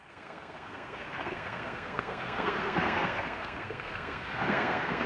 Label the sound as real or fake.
fake